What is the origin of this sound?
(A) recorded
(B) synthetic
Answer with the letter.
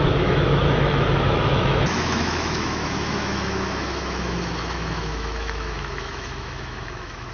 B